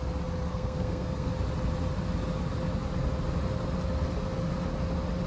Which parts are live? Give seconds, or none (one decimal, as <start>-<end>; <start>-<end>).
0.0-0.5; 1.3-5.3